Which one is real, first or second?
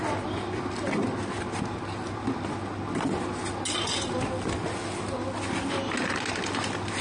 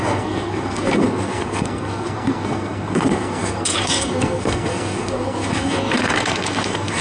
first